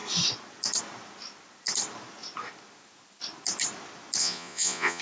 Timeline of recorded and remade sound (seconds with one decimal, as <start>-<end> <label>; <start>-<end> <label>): 0.0-4.2 recorded; 4.2-5.0 remade